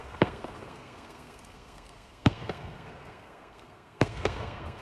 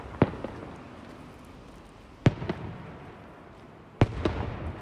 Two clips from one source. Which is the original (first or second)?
second